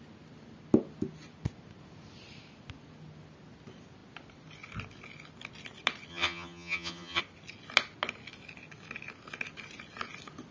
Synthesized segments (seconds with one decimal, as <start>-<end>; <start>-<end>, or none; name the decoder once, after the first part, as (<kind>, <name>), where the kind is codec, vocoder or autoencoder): 6.1-7.2 (vocoder, HiFi-GAN)